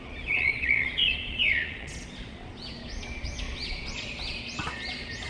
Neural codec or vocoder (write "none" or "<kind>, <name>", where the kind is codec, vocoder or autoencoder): vocoder, Vocos